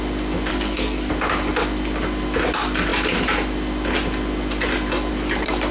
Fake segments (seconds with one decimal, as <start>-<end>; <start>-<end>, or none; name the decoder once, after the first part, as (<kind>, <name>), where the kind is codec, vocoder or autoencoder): 0.5-1.1 (codec, SNAC)